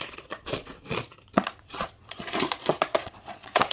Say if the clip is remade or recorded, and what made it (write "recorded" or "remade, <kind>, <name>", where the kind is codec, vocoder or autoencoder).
remade, vocoder, Vocos